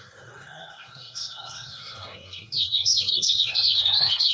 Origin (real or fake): fake